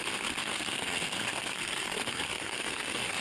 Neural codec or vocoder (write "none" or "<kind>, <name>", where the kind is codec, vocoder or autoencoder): codec, SNAC